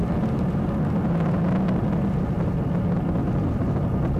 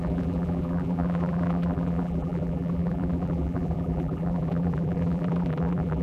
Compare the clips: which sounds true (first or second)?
first